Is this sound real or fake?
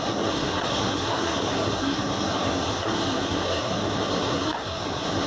fake